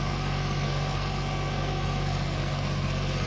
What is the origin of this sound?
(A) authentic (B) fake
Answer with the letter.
B